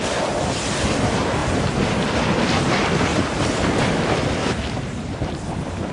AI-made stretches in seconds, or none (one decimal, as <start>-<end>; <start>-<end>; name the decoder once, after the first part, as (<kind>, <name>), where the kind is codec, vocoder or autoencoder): 3.1-3.8 (vocoder, BigVGAN v2); 4.4-5.5